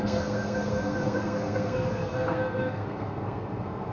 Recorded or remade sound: remade